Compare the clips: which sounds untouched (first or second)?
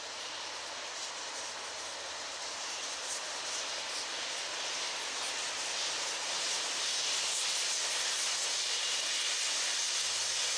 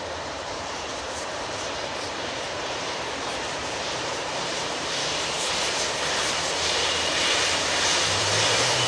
first